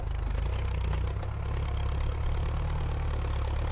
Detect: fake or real real